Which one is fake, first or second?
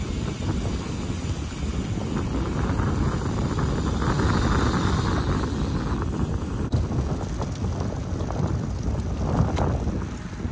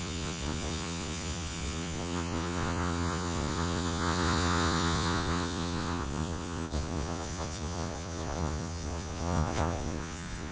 second